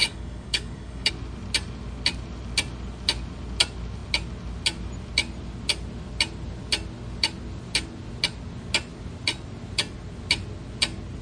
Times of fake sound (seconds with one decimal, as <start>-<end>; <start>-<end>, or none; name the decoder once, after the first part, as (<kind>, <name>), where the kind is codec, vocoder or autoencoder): 0.0-1.1 (codec, DAC)